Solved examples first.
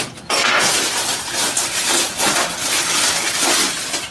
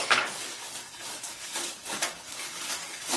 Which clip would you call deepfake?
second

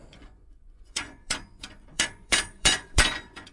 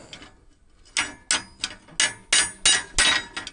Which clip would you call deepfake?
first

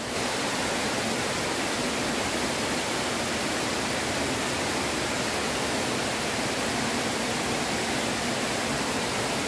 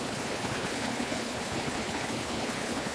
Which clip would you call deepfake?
second